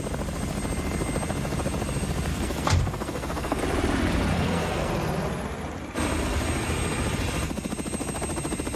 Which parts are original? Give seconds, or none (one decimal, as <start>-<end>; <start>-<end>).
0.0-2.3; 3.6-4.3; 4.9-8.8